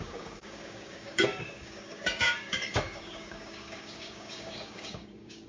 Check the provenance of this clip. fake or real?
fake